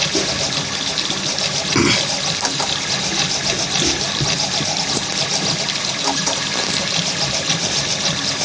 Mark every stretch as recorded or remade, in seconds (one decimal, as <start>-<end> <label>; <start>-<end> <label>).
0.0-8.4 recorded